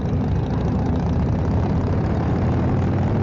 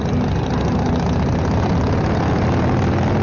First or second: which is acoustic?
second